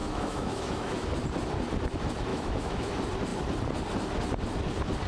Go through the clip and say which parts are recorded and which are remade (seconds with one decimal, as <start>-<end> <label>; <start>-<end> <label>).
0.0-1.1 remade; 1.1-2.3 recorded; 2.3-2.9 remade; 2.9-5.1 recorded